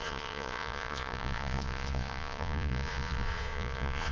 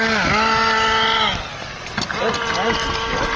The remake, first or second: first